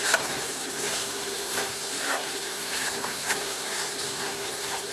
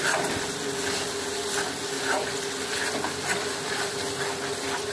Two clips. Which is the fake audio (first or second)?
first